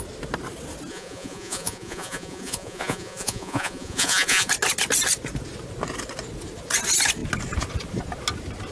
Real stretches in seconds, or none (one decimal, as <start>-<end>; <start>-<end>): 0.0-0.9; 4.5-8.7